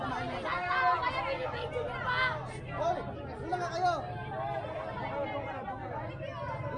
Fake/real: real